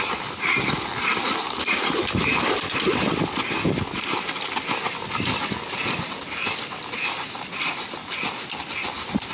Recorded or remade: recorded